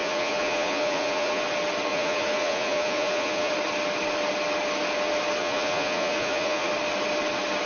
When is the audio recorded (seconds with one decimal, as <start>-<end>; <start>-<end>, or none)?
1.4-1.9; 3.5-5.4; 6.7-7.7